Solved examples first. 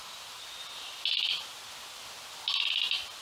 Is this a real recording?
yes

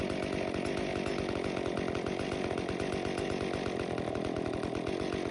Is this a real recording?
yes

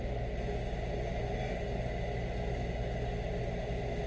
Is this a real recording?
yes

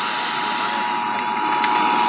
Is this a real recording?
yes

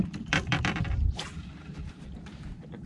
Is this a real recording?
no